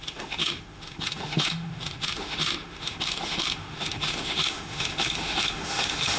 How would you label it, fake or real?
fake